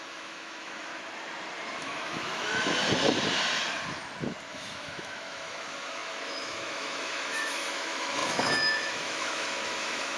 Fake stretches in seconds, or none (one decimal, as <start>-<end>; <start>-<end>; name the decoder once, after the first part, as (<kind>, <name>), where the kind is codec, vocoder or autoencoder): 0.0-0.9 (autoencoder, DAC-VAE); 1.8-2.8; 4.5-10.2